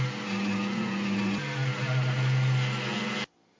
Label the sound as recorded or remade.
recorded